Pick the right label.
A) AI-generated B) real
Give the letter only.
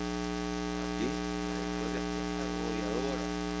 B